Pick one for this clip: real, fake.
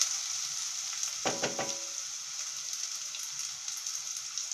real